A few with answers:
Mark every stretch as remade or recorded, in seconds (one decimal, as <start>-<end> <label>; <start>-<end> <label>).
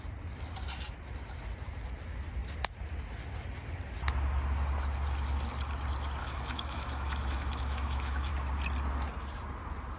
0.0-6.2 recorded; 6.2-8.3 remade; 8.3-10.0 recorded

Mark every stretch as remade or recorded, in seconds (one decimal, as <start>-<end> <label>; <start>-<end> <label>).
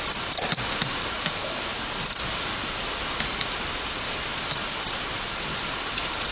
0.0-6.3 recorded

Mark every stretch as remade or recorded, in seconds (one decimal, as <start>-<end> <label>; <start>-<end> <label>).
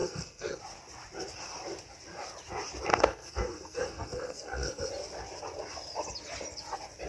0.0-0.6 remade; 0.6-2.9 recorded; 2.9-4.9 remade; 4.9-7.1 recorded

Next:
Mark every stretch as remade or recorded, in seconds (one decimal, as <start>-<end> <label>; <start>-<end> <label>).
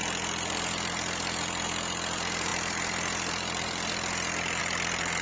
0.0-5.2 recorded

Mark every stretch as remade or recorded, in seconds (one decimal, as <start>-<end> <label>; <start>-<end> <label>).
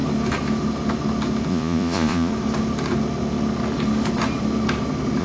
0.0-1.5 recorded; 1.5-2.3 remade; 2.3-5.2 recorded